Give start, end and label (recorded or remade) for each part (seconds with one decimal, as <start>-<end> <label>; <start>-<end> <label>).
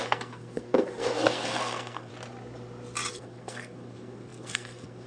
0.0-2.1 remade; 2.1-3.1 recorded; 3.1-5.1 remade